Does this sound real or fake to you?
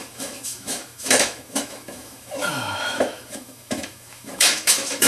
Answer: fake